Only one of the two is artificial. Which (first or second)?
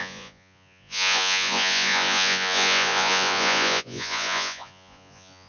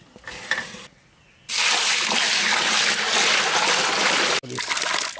first